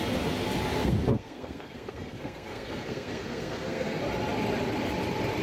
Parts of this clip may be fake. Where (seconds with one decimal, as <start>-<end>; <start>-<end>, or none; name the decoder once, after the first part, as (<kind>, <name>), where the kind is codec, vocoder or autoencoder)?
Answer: 0.8-4.0 (codec, SNAC)